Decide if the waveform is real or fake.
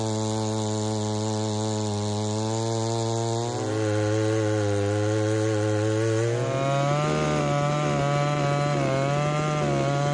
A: real